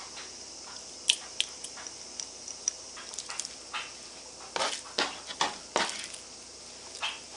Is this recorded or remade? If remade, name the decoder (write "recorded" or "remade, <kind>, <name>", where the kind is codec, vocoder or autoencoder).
recorded